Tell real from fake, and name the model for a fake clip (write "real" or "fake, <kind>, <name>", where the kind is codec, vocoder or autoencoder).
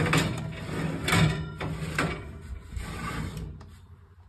real